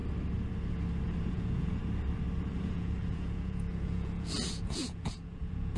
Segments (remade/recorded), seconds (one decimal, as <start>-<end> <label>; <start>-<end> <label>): 0.0-1.3 recorded; 1.3-1.8 remade; 1.8-2.5 recorded; 2.5-5.8 remade